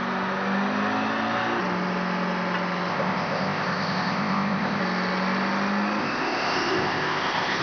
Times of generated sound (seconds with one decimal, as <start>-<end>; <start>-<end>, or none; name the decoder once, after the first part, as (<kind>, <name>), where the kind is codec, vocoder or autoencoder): 2.9-4.8 (codec, ZipCodec); 6.0-7.6